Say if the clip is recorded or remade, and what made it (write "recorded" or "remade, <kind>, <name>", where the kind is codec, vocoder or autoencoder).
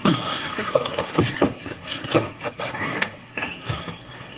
remade, codec, SNAC